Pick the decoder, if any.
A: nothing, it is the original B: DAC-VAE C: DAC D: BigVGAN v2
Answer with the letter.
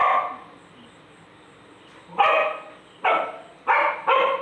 A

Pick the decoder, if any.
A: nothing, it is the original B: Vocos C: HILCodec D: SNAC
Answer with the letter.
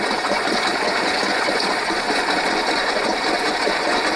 B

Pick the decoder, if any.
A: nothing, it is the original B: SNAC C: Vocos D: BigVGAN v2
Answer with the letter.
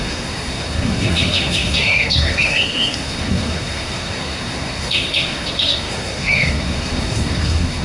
B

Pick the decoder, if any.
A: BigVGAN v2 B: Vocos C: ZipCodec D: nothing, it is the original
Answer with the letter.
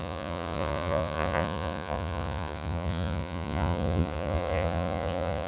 B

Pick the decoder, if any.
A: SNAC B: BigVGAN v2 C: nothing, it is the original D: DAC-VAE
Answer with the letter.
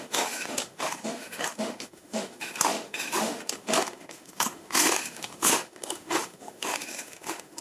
D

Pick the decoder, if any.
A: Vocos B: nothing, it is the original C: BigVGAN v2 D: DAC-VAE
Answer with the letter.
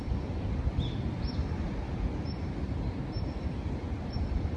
B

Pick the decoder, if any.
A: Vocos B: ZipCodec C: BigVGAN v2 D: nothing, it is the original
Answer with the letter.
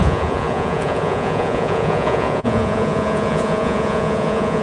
A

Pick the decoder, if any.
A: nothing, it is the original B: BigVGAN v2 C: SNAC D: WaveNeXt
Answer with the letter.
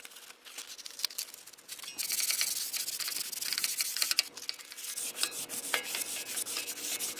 A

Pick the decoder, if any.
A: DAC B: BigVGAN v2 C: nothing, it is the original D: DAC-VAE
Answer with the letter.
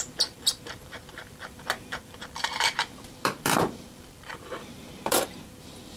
B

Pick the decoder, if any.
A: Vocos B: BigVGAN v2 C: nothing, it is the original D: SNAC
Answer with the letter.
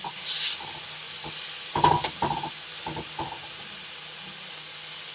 C